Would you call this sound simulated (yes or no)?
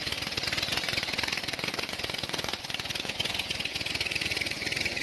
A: yes